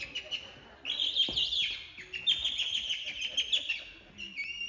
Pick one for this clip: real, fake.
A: real